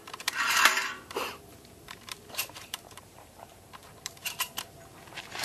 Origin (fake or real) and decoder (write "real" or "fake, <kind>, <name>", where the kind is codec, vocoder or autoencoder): fake, vocoder, BigVGAN v2